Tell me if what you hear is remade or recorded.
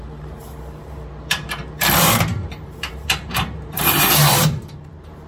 remade